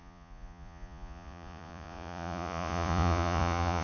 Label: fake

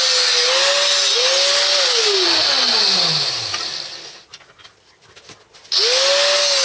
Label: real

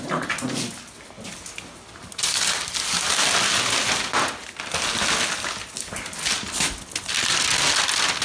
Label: real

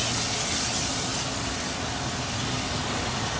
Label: real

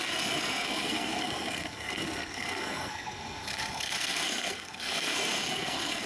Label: fake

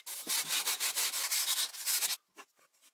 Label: real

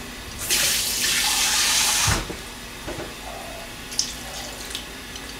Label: real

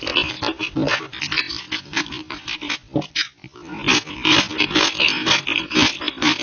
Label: real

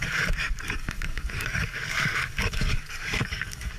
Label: fake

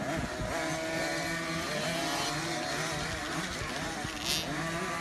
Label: real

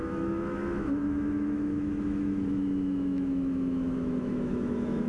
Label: fake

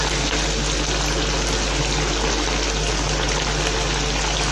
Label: real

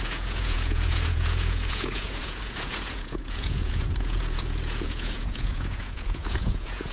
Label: fake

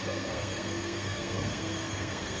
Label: fake